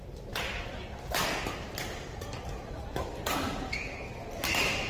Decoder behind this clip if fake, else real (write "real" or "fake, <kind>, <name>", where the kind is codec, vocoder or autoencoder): real